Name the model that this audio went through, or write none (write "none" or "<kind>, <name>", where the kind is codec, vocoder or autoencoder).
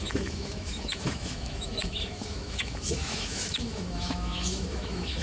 autoencoder, DAC-VAE